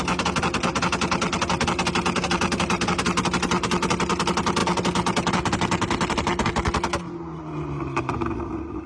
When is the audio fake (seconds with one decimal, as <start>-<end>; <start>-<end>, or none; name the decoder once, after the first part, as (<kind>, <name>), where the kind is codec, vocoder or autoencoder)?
none